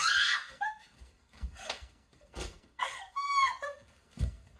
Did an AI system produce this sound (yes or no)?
yes